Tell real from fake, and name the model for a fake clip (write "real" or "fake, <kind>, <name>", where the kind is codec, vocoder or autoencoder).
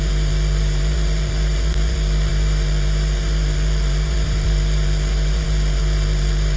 fake, vocoder, BigVGAN v2